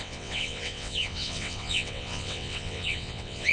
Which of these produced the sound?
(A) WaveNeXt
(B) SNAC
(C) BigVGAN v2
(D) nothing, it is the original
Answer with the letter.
A